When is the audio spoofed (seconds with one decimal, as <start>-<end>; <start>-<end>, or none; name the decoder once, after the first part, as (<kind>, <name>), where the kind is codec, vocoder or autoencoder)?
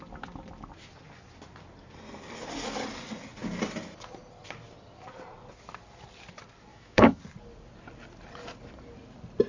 6.7-7.2 (autoencoder, DAC-VAE)